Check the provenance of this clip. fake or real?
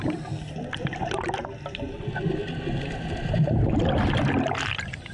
real